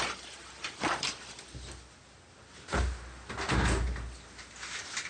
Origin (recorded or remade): recorded